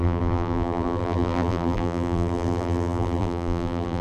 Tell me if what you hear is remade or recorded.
remade